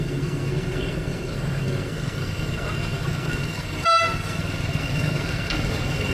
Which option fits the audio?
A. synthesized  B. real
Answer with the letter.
A